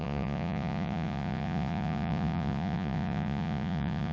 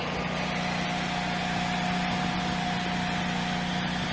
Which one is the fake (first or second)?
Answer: first